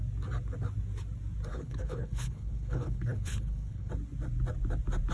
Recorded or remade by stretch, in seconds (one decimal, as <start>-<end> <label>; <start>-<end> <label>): 0.0-1.5 recorded; 1.5-3.9 remade; 3.9-5.1 recorded